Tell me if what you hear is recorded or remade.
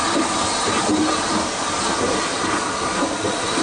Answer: recorded